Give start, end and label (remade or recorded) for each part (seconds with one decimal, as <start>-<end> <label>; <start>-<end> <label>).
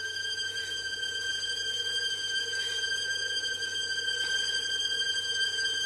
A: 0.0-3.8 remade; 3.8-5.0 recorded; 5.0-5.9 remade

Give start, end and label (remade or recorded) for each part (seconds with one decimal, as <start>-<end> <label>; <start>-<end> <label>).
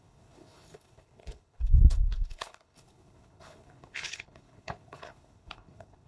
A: 0.0-6.1 remade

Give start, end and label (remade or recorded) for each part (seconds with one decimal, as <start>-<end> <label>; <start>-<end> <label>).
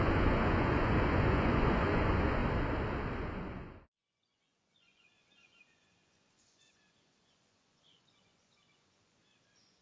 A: 0.0-2.4 remade; 2.4-3.2 recorded; 3.2-9.8 remade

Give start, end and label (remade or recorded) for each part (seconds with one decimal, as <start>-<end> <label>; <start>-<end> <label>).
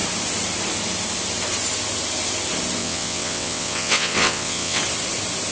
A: 0.0-2.8 recorded; 2.8-4.8 remade; 4.8-5.5 recorded